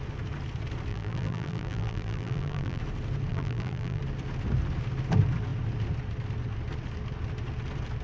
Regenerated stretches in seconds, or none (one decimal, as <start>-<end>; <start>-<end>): 0.9-2.8; 3.3-4.0